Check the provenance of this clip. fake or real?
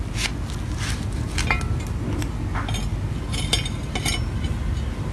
real